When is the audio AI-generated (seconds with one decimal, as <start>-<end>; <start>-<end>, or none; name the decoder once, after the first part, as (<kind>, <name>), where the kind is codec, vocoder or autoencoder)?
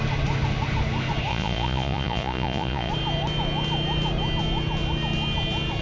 1.3-2.9 (vocoder, Vocos)